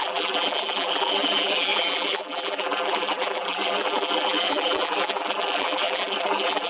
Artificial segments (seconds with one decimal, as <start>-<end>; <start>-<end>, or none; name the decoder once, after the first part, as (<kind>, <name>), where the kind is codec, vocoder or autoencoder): 0.0-6.7 (vocoder, BigVGAN v2)